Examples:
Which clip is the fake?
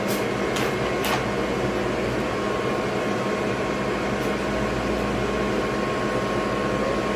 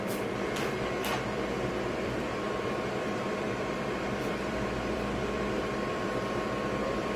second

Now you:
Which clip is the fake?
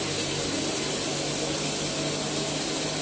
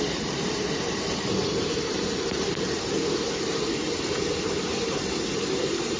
second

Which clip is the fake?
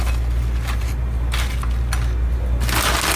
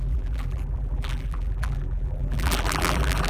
second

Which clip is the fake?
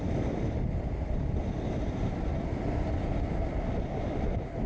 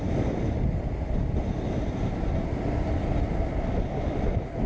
first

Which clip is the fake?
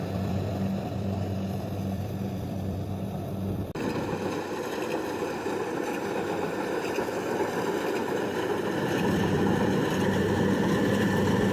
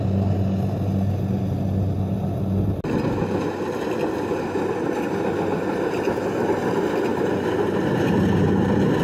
first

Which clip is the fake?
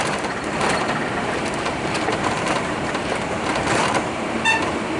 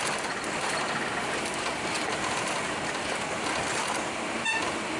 first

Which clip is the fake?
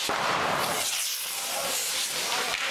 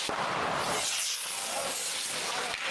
first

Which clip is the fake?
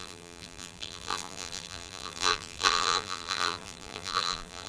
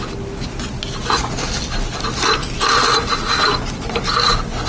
first